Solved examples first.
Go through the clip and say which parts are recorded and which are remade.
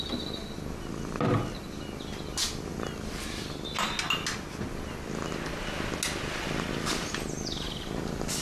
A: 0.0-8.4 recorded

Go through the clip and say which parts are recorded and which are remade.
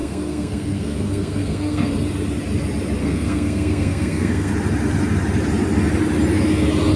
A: 0.0-1.9 remade; 1.9-3.0 recorded; 3.0-4.5 remade; 4.5-7.0 recorded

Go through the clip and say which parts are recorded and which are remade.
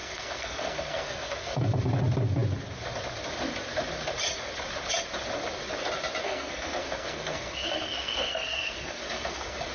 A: 0.0-1.8 remade; 1.8-6.2 recorded; 6.2-9.7 remade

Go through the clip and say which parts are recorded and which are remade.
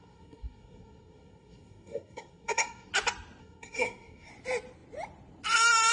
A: 0.0-2.9 remade; 2.9-3.4 recorded; 3.4-4.3 remade; 4.3-5.9 recorded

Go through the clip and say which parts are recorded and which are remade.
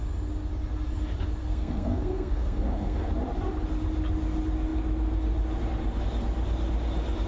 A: 0.0-1.4 recorded; 1.4-3.1 remade; 3.1-7.3 recorded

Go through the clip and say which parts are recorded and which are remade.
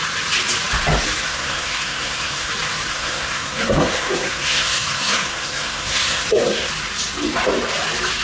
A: 0.0-1.3 recorded; 1.3-2.5 remade; 2.5-2.9 recorded; 2.9-6.7 remade; 6.7-8.2 recorded